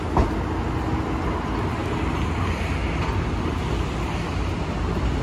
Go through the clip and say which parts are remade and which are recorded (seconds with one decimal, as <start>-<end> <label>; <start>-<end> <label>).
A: 0.0-5.2 recorded